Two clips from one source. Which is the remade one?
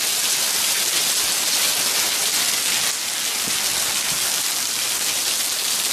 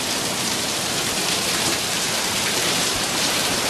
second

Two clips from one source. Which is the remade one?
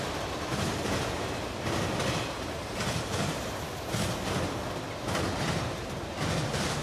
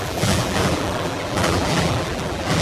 second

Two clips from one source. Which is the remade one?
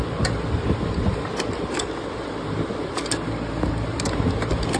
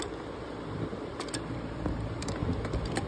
second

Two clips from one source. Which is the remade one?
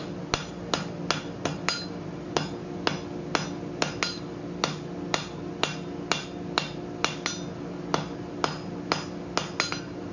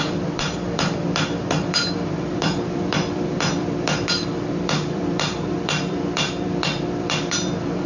second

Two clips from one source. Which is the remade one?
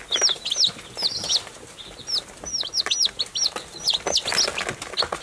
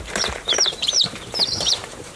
second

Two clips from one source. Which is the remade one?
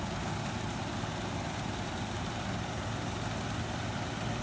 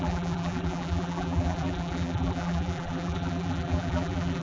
second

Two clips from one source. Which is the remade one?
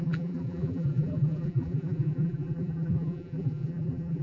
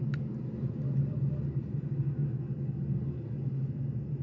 first